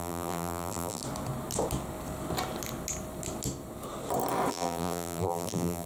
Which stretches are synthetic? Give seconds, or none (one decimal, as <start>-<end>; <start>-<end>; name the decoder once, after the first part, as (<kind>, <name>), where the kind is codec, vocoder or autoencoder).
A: 0.0-1.0 (vocoder, BigVGAN v2); 4.5-5.9

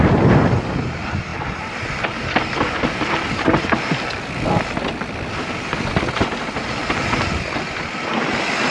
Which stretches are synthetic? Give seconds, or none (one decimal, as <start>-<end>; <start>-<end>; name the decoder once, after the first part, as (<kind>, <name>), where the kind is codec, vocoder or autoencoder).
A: none

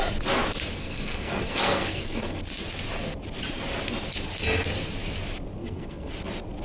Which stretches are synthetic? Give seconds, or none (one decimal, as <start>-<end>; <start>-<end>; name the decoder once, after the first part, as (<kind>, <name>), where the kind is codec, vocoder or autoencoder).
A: 0.8-2.4 (codec, SNAC); 5.6-6.1

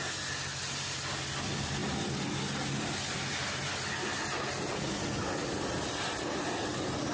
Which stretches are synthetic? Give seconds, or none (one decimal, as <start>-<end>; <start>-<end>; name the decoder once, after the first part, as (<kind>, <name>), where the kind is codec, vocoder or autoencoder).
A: none